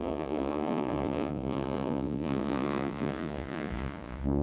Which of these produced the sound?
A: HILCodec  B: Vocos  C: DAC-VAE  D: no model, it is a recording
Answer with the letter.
B